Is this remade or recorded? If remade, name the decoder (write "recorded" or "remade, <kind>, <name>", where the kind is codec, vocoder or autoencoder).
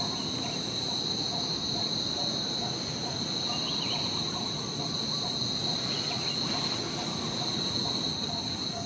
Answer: recorded